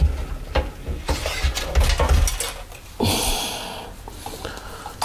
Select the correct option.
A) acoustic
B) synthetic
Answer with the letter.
A